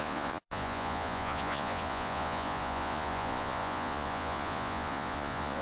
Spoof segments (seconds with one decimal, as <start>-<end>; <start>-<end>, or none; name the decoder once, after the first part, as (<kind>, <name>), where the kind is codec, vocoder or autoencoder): 0.0-5.6 (vocoder, Vocos)